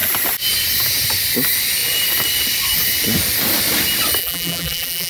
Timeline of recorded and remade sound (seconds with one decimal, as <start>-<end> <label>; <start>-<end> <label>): 0.0-4.2 recorded; 4.2-5.1 remade